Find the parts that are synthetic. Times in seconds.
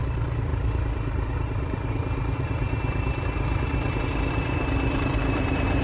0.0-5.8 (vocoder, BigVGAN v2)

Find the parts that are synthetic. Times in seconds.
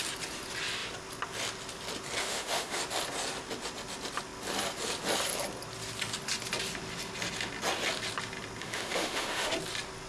2.2-2.8 (autoencoder, DAC-VAE); 8.6-9.5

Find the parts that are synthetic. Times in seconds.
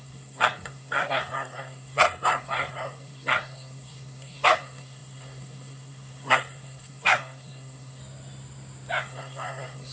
0.0-8.0 (codec, SNAC); 9.0-9.9